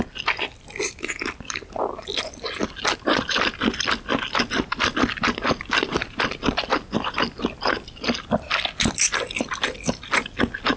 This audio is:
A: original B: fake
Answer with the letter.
A